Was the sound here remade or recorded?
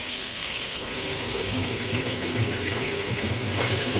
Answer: remade